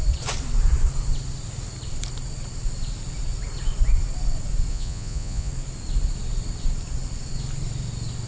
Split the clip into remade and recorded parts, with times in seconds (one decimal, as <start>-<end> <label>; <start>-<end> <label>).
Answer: 0.0-4.7 recorded; 4.7-5.5 remade; 5.5-8.3 recorded